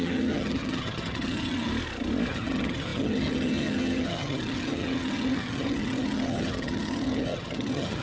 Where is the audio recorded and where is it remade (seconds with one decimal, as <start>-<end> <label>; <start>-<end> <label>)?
0.0-1.7 remade; 1.7-2.3 recorded; 2.3-8.0 remade